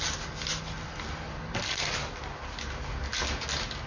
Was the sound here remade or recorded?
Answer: recorded